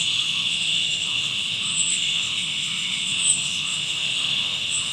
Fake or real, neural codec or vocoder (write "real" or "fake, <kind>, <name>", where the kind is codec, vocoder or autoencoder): fake, autoencoder, DAC-VAE